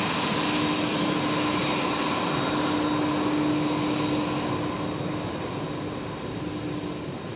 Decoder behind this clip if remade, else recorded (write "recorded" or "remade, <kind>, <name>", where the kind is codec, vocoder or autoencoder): recorded